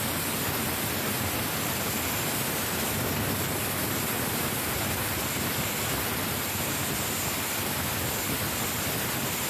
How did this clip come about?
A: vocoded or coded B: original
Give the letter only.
B